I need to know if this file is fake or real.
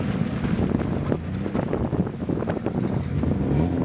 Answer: real